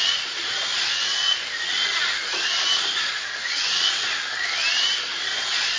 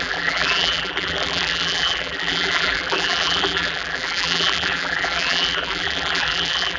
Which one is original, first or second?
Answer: first